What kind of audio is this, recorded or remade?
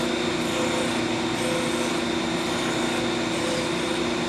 recorded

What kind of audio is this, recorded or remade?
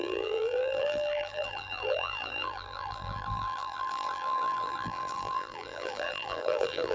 remade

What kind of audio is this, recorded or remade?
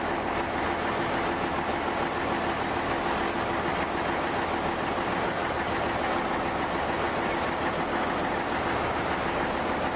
recorded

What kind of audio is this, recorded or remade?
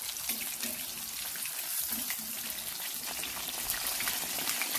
recorded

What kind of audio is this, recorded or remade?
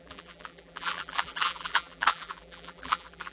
remade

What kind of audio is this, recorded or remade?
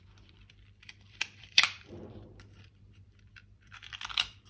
remade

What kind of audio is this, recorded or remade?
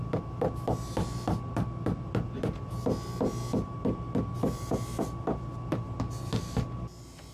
recorded